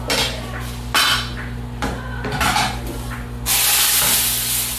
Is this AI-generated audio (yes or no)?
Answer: no